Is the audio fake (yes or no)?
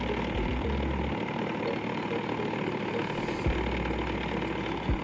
no